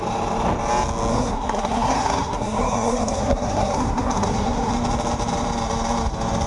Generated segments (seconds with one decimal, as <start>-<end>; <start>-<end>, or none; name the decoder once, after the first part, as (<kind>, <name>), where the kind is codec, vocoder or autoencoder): 1.1-4.7 (codec, SNAC)

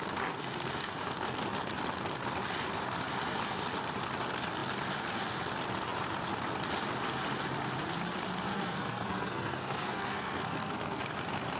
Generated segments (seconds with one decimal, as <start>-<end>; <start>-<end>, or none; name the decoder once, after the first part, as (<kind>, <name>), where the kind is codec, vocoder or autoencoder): 8.5-11.0 (codec, SNAC)

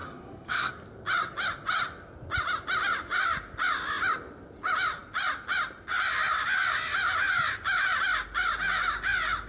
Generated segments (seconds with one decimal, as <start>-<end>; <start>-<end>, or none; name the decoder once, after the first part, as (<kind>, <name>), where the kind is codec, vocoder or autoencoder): 0.0-0.7 (codec, SNAC)

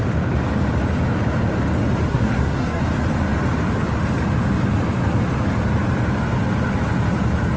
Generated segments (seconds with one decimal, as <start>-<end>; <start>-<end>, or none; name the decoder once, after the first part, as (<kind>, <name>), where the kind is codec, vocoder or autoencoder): 2.1-2.8 (codec, SNAC)

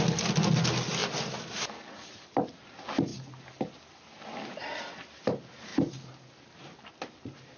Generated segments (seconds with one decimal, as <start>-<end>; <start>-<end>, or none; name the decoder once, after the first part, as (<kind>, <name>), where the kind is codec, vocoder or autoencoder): none

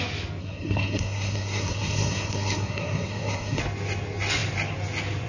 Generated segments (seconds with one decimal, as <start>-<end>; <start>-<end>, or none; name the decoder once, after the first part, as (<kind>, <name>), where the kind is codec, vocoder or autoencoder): 0.4-3.6 (codec, SNAC)

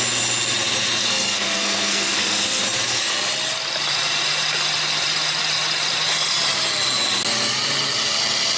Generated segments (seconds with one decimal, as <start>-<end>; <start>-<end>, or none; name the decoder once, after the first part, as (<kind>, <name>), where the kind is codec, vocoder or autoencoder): 1.0-2.6 (codec, SNAC)